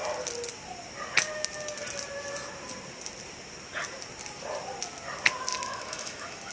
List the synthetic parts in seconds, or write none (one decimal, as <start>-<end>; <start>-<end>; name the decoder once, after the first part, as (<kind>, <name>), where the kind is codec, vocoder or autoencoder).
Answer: 5.5-6.5 (autoencoder, DAC-VAE)